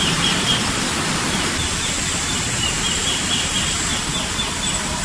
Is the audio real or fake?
fake